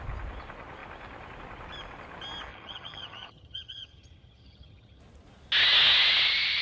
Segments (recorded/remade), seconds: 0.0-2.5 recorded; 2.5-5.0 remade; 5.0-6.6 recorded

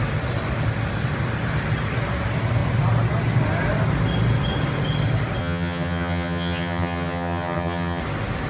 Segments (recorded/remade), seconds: 0.0-5.4 recorded; 5.4-8.0 remade; 8.0-8.5 recorded

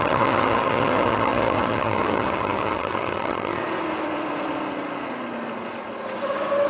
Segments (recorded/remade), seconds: 0.0-3.6 remade; 3.6-6.7 recorded

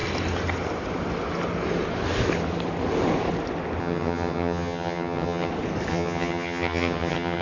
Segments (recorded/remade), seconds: 0.0-3.8 recorded; 3.8-5.5 remade; 5.5-5.9 recorded; 5.9-7.4 remade

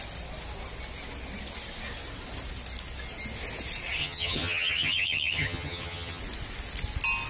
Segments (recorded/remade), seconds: 0.0-4.0 recorded; 4.0-6.2 remade; 6.2-7.3 recorded